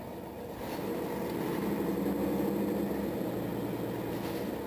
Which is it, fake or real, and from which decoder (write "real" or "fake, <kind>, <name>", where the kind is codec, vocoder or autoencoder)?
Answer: real